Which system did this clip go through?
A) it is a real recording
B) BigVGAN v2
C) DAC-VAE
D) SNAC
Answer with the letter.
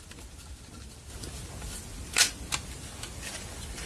A